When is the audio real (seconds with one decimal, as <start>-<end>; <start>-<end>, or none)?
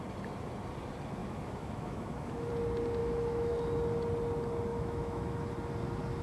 0.0-1.2; 2.5-3.0; 3.5-4.7; 5.5-6.2